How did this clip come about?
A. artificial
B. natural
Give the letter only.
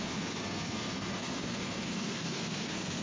A